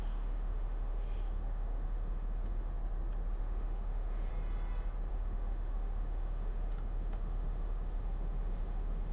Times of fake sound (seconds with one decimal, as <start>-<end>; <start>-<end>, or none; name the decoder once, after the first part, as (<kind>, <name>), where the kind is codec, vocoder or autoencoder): 0.0-2.7 (autoencoder, DAC-VAE); 3.4-4.3; 5.1-9.1